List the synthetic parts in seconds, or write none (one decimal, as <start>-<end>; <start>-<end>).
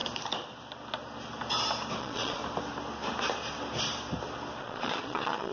2.0-2.4; 4.6-5.5